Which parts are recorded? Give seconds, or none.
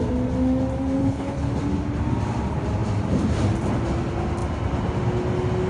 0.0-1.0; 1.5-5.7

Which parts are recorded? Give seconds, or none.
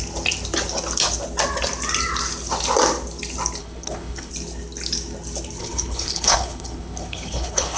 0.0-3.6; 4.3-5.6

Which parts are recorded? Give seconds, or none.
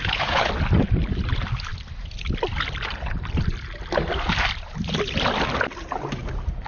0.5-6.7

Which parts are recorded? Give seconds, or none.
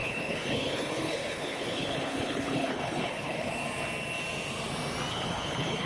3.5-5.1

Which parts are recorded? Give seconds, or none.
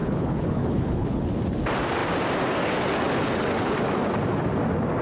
1.2-5.0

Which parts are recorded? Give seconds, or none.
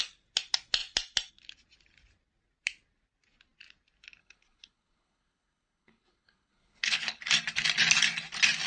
0.0-4.2; 7.2-8.7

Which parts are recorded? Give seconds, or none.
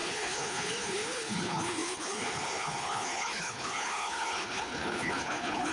none